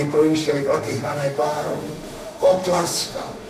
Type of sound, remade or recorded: remade